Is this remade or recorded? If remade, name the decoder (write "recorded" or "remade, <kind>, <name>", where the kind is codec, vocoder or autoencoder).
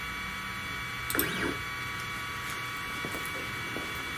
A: recorded